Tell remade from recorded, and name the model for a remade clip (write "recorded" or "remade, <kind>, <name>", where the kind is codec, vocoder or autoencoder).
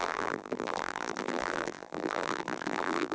remade, vocoder, BigVGAN v2